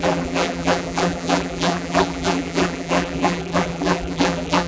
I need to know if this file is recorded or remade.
remade